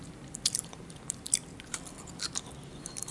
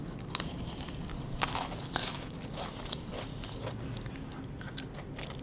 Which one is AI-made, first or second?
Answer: first